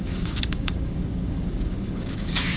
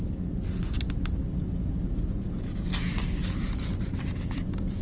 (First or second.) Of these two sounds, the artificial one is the first